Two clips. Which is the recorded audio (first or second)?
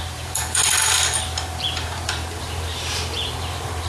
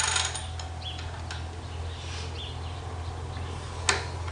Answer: second